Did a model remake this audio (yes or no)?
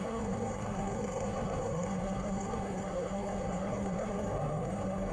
yes